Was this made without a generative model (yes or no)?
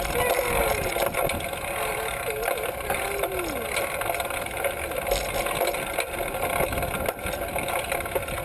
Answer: yes